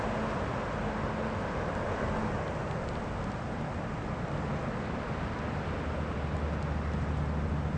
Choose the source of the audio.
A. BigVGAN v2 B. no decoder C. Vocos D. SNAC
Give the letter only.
B